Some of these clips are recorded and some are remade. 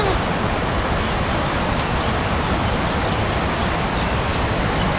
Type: recorded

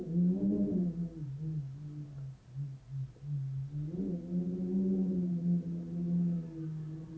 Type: recorded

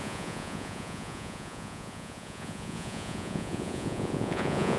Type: remade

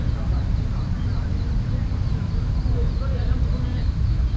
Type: recorded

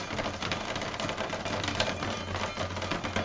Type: recorded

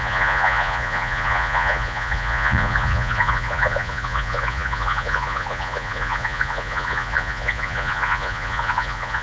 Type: remade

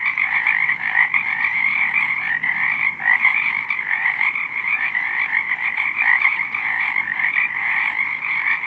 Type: remade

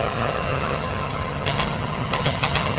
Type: remade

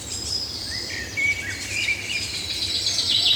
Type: remade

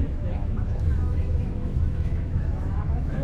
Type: remade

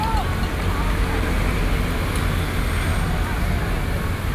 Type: recorded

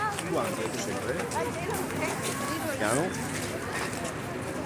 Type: recorded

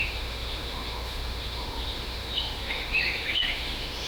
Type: remade